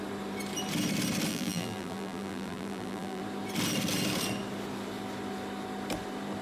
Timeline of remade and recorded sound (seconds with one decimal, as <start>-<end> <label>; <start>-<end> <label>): 0.0-1.3 recorded; 1.3-3.2 remade; 3.2-6.4 recorded